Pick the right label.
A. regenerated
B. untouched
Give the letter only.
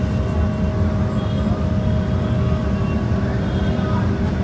B